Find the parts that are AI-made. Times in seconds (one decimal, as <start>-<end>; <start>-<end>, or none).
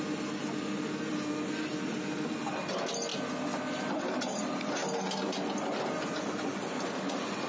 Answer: none